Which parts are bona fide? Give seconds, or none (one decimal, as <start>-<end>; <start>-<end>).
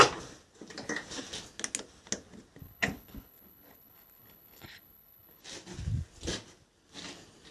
0.0-2.6; 5.4-7.5